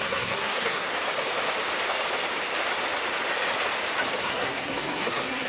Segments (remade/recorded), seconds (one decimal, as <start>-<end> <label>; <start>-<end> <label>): 0.0-0.9 remade; 0.9-4.2 recorded; 4.2-5.5 remade